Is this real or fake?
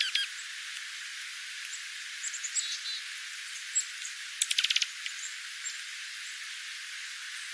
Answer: real